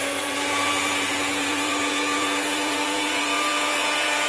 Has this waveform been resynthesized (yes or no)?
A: yes